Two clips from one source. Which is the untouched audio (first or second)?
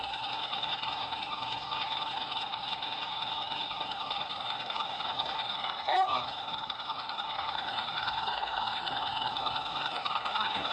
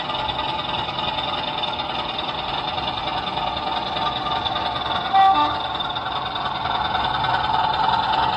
second